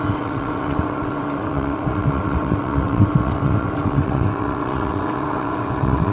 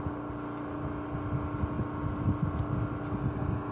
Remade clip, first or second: first